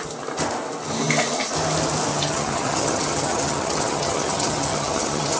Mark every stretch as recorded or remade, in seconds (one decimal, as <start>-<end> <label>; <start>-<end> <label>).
0.0-2.1 recorded; 2.1-5.4 remade